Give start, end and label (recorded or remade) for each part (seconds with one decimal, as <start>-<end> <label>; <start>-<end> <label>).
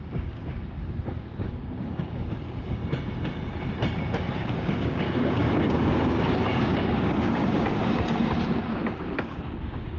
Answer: 0.0-2.8 remade; 2.8-4.4 recorded; 4.4-10.0 remade